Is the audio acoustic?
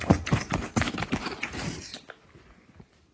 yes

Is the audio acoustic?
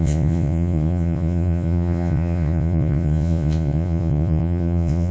no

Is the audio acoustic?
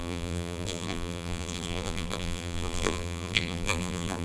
no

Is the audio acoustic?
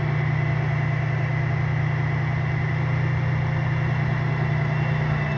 yes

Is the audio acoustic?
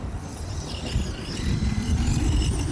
yes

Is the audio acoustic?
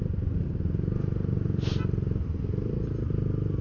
yes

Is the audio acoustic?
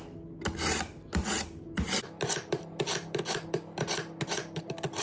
yes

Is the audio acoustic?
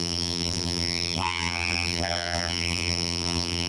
no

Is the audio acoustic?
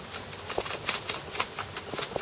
yes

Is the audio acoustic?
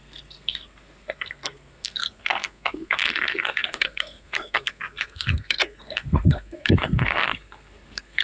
no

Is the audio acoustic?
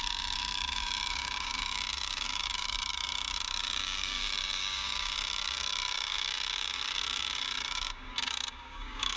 no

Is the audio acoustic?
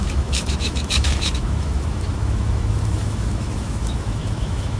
no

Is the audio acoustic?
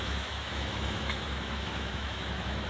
no